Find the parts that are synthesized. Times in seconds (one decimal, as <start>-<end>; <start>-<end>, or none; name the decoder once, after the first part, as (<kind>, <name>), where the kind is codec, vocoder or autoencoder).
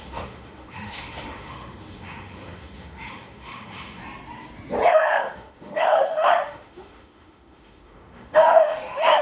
0.0-4.0 (autoencoder, DAC-VAE); 4.9-9.2